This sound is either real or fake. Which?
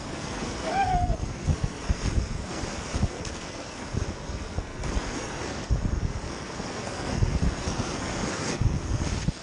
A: fake